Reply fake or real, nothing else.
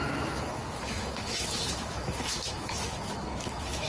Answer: fake